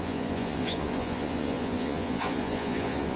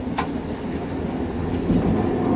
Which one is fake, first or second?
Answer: first